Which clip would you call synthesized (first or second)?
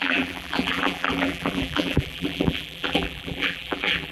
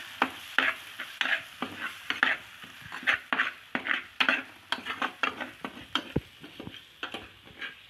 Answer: first